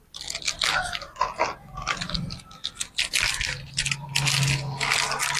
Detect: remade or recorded recorded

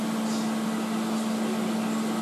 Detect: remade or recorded recorded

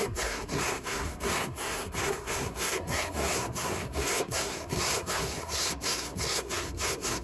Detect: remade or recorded remade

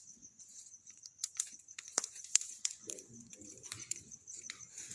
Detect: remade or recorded remade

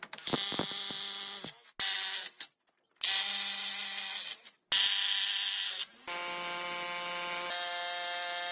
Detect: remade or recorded recorded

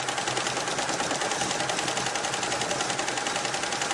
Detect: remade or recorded recorded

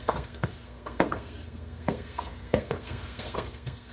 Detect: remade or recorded remade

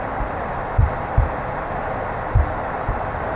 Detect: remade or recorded remade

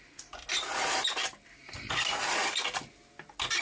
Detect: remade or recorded recorded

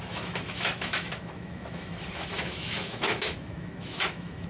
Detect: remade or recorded remade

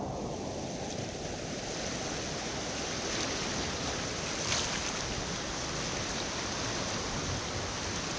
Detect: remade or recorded recorded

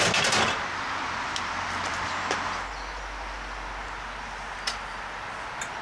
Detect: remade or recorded recorded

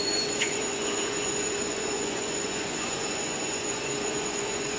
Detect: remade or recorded remade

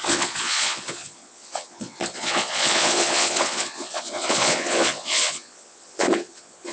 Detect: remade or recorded remade